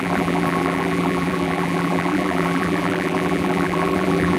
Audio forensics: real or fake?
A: fake